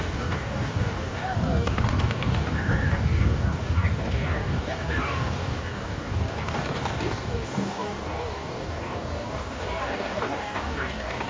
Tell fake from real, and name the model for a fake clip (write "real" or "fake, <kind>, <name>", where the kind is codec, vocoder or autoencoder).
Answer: fake, codec, DAC